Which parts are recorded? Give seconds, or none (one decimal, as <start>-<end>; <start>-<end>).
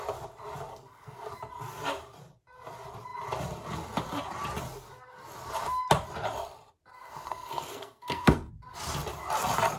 0.0-0.7; 1.3-6.9; 8.5-9.8